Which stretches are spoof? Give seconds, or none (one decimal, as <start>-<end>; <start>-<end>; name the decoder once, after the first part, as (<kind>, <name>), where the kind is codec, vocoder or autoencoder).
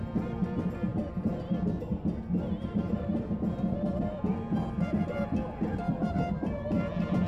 none